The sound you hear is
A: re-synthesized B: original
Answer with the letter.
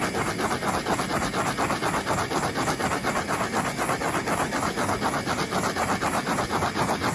B